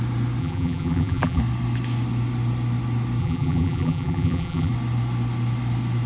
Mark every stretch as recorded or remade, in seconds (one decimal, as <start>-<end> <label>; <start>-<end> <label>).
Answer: 0.0-0.4 recorded; 0.4-1.4 remade; 1.4-3.2 recorded; 3.2-4.7 remade; 4.7-6.1 recorded